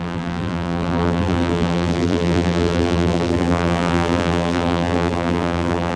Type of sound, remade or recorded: remade